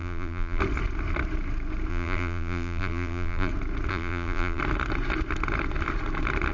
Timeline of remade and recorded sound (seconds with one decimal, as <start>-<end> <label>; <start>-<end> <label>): 0.0-0.6 remade; 0.6-1.9 recorded; 1.9-3.5 remade; 3.5-3.9 recorded; 3.9-4.6 remade; 4.6-6.5 recorded